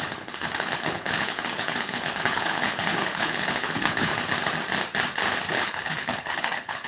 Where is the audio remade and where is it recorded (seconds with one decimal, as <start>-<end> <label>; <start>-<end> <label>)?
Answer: 0.0-4.1 remade; 4.1-5.6 recorded; 5.6-6.9 remade